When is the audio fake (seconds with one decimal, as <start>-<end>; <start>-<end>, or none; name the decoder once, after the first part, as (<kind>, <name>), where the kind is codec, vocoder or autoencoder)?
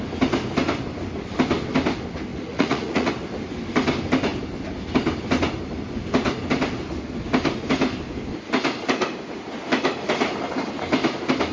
2.3-3.1 (vocoder, Vocos)